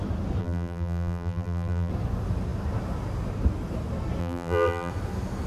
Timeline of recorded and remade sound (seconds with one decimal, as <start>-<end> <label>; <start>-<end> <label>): 0.0-0.4 recorded; 0.4-1.9 remade; 1.9-4.2 recorded; 4.2-4.9 remade; 4.9-5.5 recorded